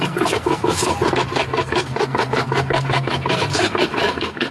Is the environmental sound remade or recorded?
remade